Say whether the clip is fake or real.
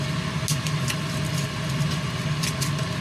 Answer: real